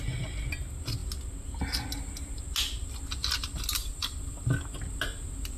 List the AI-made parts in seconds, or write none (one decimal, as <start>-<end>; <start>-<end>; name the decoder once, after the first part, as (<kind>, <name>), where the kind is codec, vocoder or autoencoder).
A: 3.8-4.4 (vocoder, BigVGAN v2)